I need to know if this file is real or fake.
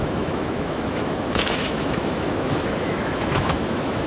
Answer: fake